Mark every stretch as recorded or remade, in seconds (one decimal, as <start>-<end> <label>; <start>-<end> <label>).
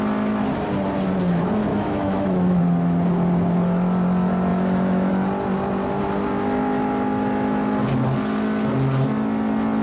0.0-1.7 recorded; 1.7-2.6 remade; 2.6-4.5 recorded; 4.5-5.1 remade; 5.1-9.8 recorded